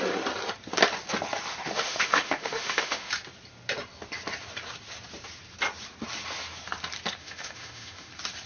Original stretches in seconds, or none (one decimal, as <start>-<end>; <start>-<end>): 0.0-1.5; 3.1-7.2; 8.1-8.5